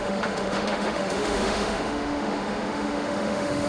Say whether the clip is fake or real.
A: fake